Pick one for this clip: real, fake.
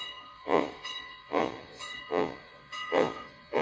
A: fake